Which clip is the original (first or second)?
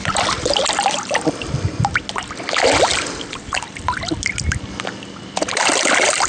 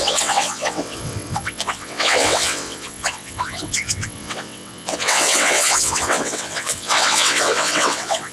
first